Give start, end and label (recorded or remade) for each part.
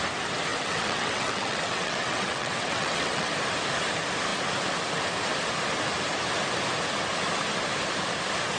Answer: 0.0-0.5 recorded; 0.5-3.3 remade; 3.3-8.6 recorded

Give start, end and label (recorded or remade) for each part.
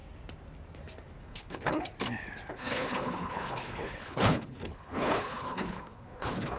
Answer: 0.0-1.2 recorded; 1.2-1.9 remade; 1.9-2.5 recorded; 2.5-6.6 remade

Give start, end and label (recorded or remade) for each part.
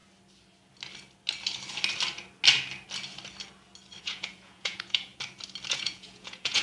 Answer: 0.0-4.0 recorded; 4.0-5.1 remade; 5.1-5.7 recorded; 5.7-6.6 remade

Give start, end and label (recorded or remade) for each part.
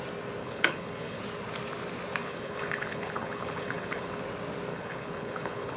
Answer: 0.0-0.4 recorded; 0.4-1.2 remade; 1.2-2.2 recorded; 2.2-4.2 remade; 4.2-4.7 recorded; 4.7-5.8 remade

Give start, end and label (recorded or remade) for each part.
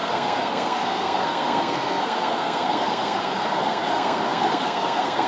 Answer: 0.0-5.3 remade